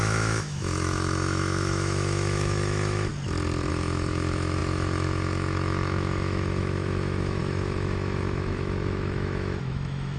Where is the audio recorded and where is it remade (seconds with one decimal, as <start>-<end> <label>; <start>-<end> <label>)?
0.0-3.1 remade; 3.1-3.7 recorded; 3.7-10.2 remade